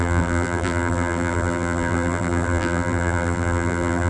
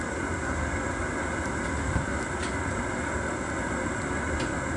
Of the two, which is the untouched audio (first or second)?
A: second